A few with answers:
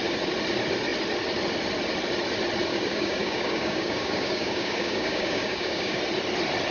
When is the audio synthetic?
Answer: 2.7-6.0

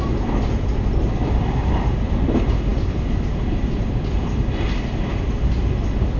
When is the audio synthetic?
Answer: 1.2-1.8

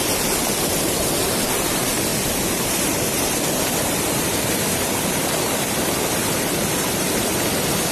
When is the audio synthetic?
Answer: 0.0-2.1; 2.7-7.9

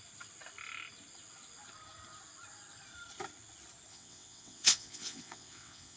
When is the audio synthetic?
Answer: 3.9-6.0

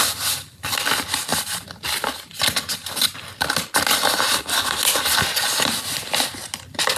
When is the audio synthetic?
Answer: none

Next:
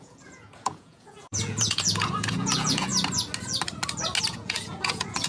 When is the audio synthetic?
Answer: 0.0-2.9; 4.3-5.3

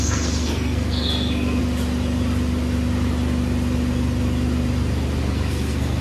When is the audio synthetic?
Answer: 0.0-1.6; 5.2-6.0